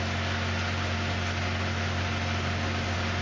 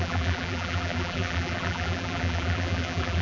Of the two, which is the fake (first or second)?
second